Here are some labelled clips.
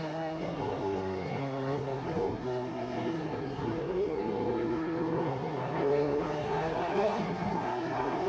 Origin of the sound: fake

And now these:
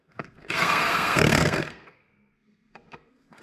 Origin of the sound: fake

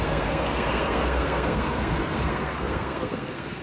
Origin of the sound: fake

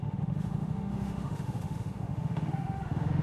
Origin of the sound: fake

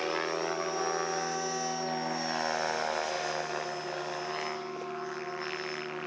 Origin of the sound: real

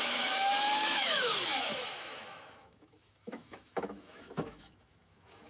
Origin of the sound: fake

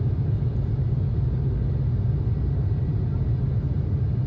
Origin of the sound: real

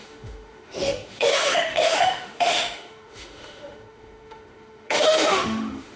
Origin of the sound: fake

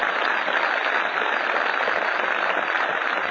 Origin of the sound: real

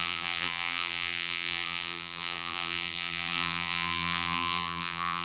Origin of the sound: fake